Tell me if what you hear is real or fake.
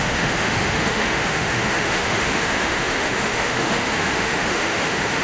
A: fake